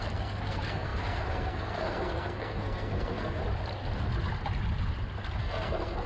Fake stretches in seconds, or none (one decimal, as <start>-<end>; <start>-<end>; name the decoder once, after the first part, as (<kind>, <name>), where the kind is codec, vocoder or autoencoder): 0.0-3.4 (codec, SNAC); 5.4-6.1